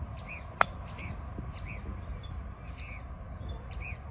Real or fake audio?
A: real